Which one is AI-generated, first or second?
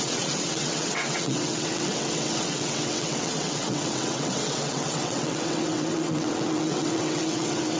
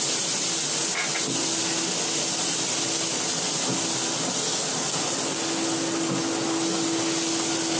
first